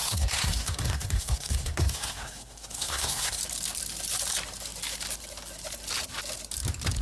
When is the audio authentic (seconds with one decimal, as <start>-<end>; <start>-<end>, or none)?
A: 3.4-7.0